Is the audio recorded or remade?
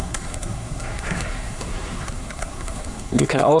remade